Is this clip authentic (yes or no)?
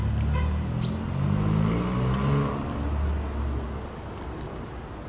yes